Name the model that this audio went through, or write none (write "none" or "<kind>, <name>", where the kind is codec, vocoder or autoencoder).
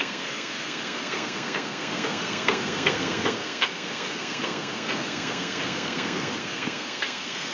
codec, SNAC